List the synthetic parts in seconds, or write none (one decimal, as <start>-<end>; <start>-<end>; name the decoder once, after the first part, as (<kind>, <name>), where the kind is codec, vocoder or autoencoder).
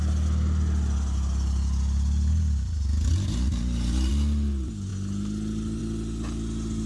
3.1-4.1 (vocoder, BigVGAN v2)